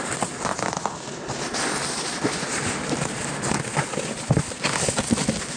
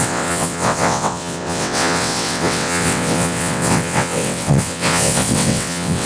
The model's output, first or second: second